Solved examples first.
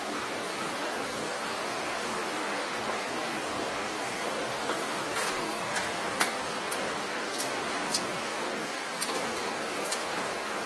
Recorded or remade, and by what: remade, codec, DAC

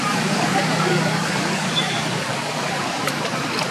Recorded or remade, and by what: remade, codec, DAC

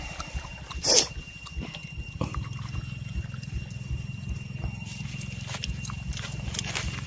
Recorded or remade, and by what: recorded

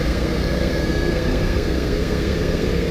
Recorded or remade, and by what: remade, codec, SNAC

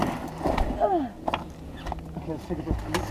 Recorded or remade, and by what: recorded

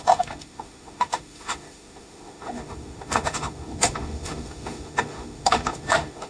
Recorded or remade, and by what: remade, autoencoder, DAC-VAE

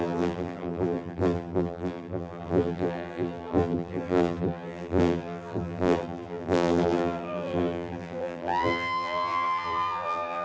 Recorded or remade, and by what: remade, vocoder, BigVGAN v2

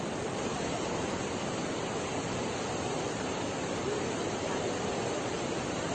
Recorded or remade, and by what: remade, vocoder, BigVGAN v2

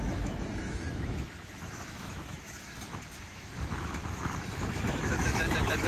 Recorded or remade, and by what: remade, autoencoder, DAC-VAE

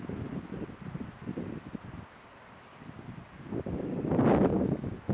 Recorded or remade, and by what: remade, vocoder, BigVGAN v2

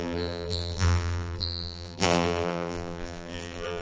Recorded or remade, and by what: remade, vocoder, BigVGAN v2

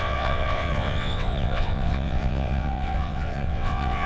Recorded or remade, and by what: remade, vocoder, WaveNeXt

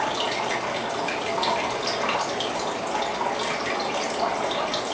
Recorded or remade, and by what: recorded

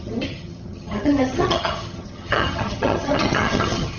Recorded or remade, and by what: remade, vocoder, HiFi-GAN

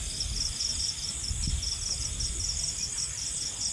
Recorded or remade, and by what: recorded